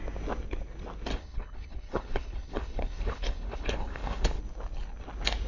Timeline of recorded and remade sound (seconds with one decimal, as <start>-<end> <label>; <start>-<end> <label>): 0.0-1.1 recorded; 1.1-4.4 remade; 4.4-5.5 recorded